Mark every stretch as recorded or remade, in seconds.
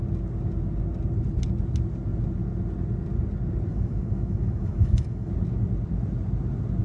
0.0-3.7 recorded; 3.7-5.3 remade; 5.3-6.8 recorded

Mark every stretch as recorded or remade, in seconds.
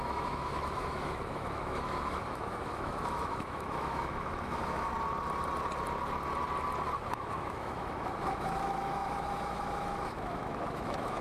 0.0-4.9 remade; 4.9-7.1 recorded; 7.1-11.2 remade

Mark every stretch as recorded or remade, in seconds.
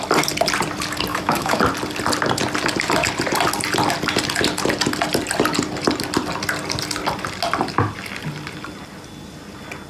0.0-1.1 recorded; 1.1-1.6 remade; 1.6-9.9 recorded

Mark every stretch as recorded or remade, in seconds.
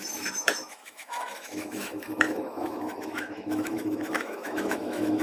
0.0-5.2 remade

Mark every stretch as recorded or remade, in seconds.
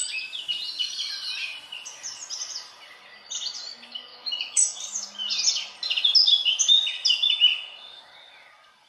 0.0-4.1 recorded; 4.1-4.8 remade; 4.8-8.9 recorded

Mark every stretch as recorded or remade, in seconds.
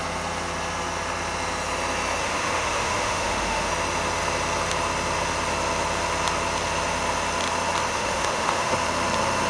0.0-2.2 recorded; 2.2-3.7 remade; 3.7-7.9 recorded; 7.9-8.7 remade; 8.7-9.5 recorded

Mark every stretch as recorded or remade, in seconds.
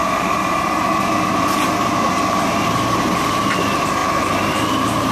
0.0-5.1 recorded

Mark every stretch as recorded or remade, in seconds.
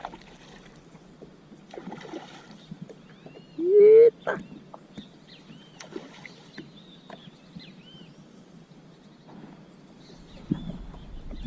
0.0-11.5 recorded